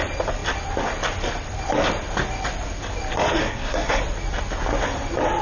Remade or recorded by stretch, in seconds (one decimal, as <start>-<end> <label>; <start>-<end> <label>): 0.0-3.4 recorded; 3.4-4.0 remade; 4.0-5.4 recorded